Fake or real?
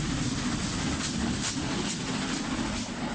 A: real